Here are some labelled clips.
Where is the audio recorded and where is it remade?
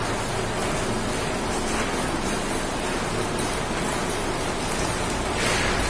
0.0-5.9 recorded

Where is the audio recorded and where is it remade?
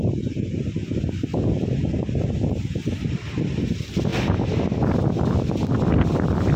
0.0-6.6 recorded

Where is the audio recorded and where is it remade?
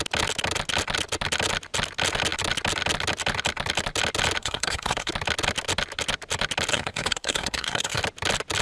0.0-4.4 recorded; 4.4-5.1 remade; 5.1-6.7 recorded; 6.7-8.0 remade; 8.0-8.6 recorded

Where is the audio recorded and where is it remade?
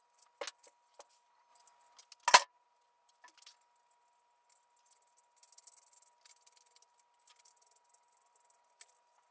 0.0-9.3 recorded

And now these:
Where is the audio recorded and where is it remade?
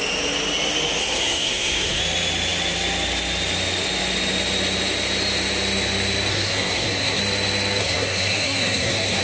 0.0-1.0 recorded; 1.0-2.0 remade; 2.0-6.3 recorded; 6.3-7.2 remade; 7.2-7.8 recorded; 7.8-9.2 remade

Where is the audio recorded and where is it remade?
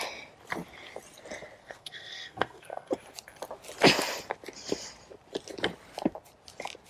0.0-1.6 recorded; 1.6-2.9 remade; 2.9-6.9 recorded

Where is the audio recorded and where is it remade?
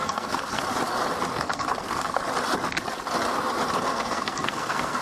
0.0-0.6 remade; 0.6-1.3 recorded; 1.3-2.2 remade; 2.2-3.9 recorded; 3.9-5.0 remade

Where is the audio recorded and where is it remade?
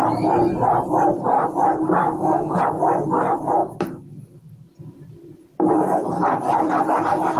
0.0-2.0 recorded; 2.0-2.6 remade; 2.6-7.4 recorded